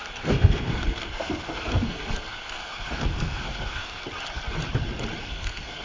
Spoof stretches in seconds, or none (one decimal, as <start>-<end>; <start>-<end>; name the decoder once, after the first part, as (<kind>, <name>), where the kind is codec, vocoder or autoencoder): 0.0-4.0 (codec, SNAC); 5.2-5.8